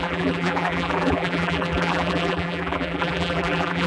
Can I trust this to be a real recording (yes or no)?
no